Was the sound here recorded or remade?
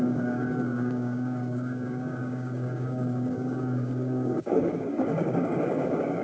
remade